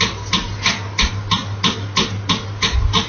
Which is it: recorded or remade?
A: recorded